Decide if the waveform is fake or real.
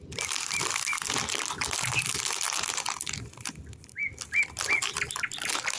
real